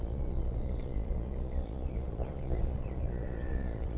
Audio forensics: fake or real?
fake